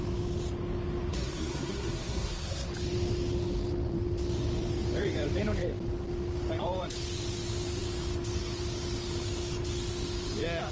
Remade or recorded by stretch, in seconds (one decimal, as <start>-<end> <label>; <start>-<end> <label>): 0.0-1.1 recorded; 1.1-2.7 remade; 2.7-10.7 recorded